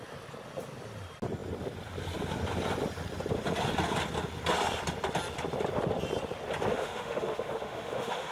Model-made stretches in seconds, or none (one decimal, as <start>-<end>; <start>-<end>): 6.7-8.3